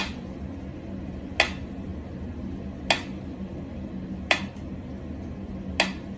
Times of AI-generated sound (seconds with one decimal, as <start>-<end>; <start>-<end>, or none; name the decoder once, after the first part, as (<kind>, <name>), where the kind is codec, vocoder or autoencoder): none